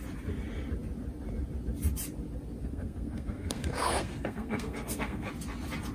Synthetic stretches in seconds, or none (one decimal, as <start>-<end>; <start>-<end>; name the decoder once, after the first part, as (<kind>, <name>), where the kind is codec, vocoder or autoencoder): 2.6-5.3 (codec, SNAC)